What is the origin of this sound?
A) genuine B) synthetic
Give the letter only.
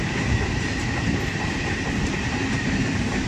B